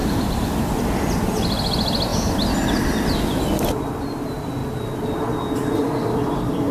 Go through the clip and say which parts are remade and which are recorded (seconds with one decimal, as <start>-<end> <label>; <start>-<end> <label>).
0.0-0.8 remade; 0.8-6.7 recorded